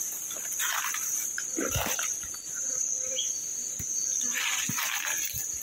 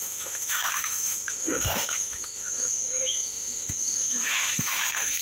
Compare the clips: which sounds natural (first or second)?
first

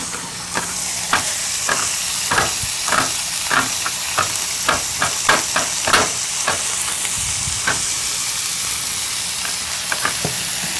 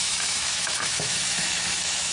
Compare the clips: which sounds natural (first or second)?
first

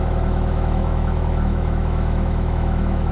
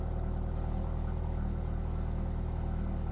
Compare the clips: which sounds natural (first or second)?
second